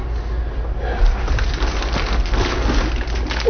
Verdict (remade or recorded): recorded